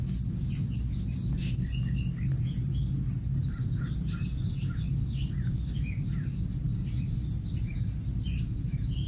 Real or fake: real